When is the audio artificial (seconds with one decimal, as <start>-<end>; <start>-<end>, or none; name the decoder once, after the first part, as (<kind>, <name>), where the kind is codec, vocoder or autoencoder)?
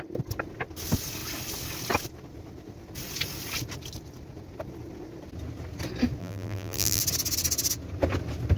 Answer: 6.2-7.0 (vocoder, BigVGAN v2)